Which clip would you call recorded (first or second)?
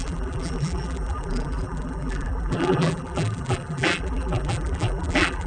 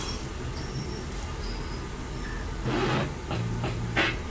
second